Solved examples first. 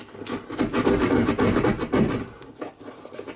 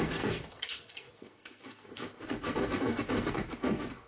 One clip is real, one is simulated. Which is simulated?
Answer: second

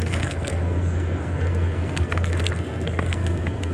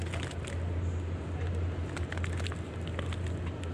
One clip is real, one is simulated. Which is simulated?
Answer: first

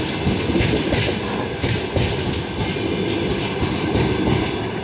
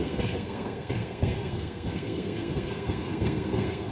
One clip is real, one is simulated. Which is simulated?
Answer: second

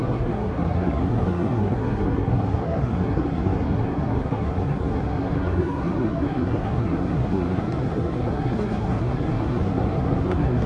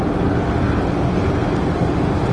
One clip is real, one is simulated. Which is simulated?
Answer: first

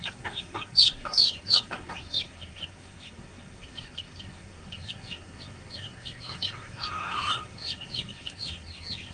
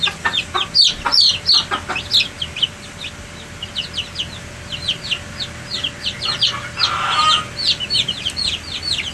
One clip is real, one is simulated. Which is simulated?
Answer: first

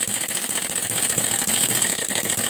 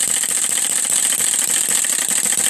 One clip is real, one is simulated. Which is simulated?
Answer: first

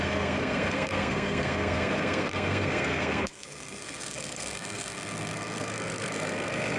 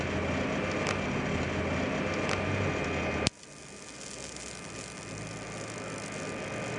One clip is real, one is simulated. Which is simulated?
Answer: first